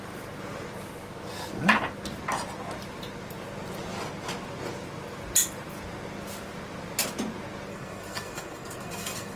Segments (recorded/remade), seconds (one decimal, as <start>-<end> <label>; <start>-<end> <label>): 0.0-7.7 recorded; 7.7-9.4 remade